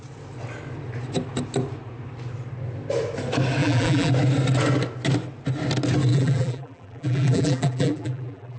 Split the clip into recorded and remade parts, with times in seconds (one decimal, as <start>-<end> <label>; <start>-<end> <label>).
0.0-3.6 recorded; 3.6-4.1 remade; 4.1-6.1 recorded; 6.1-8.6 remade